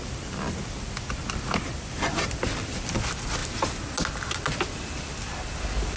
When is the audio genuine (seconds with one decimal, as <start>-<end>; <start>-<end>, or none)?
0.0-6.0